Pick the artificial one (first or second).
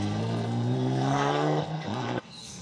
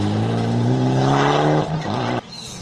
first